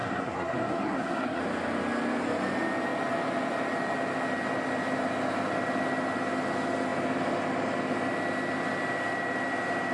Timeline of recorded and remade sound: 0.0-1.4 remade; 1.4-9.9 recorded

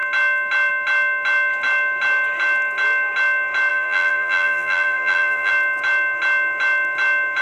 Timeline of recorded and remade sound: 0.0-3.7 recorded; 3.7-5.5 remade; 5.5-7.4 recorded

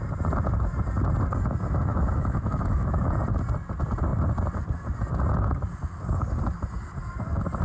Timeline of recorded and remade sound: 0.0-1.9 recorded; 1.9-3.0 remade; 3.0-7.6 recorded

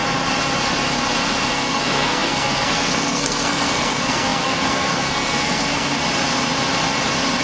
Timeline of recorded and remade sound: 0.0-1.5 recorded; 1.5-6.0 remade; 6.0-7.4 recorded

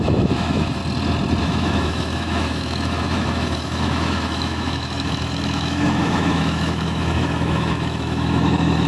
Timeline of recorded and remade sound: 0.0-0.8 remade; 0.8-1.4 recorded; 1.4-8.9 remade